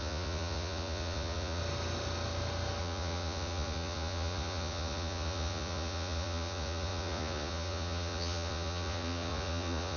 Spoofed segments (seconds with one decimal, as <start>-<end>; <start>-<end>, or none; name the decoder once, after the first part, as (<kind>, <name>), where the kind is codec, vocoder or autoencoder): 0.0-1.6 (vocoder, Vocos); 2.8-10.0